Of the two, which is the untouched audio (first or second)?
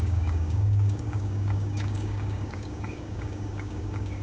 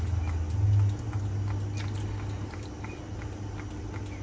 second